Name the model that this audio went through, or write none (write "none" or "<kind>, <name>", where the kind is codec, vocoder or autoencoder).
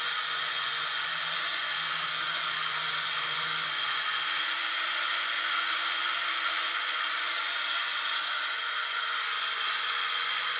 vocoder, Vocos